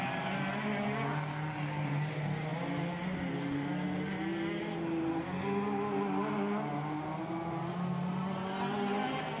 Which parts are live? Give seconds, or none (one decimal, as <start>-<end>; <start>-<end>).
0.0-9.4